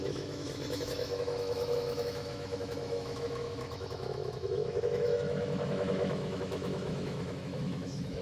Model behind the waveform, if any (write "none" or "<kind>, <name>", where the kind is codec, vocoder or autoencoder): autoencoder, DAC-VAE